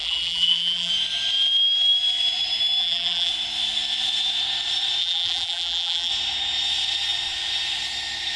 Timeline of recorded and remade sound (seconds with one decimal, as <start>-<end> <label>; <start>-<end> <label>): 0.0-0.9 remade; 0.9-2.8 recorded; 2.8-3.3 remade; 3.3-5.0 recorded; 5.0-6.1 remade; 6.1-8.4 recorded